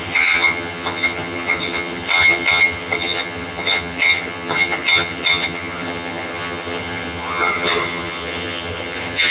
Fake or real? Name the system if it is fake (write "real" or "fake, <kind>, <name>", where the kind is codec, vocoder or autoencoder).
fake, vocoder, HiFi-GAN